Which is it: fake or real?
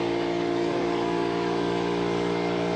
fake